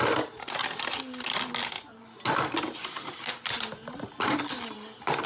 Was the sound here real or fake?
real